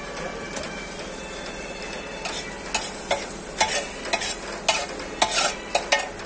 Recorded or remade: recorded